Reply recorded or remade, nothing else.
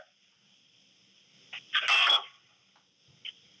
recorded